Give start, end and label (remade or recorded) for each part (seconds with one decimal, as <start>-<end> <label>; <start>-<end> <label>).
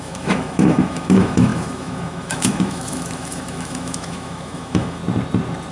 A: 0.0-5.0 remade; 5.0-5.7 recorded